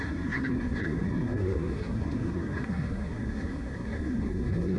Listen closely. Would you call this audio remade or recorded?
remade